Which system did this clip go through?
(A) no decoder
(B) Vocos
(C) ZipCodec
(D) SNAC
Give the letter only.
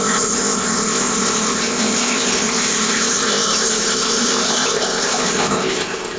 C